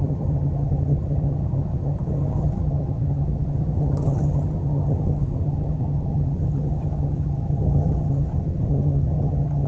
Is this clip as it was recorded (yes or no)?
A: no